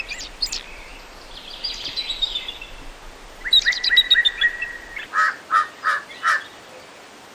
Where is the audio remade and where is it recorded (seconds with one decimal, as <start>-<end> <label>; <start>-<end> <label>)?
0.0-0.9 remade; 0.9-3.3 recorded; 3.3-7.3 remade